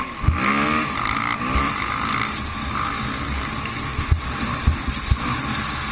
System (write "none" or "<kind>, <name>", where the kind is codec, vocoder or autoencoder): none